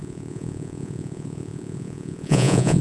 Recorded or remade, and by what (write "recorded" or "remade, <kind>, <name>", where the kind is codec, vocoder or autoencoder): remade, vocoder, Vocos